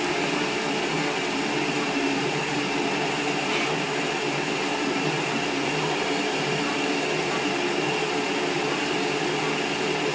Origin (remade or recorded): recorded